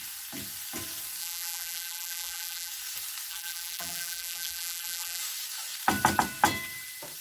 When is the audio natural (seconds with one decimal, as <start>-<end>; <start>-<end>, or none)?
0.0-1.2; 2.7-3.3; 5.2-7.2